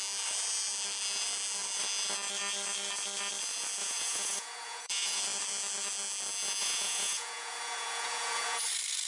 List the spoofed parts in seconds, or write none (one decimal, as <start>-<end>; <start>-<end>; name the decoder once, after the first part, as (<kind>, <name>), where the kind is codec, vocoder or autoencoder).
3.8-5.2 (vocoder, Vocos); 6.6-8.6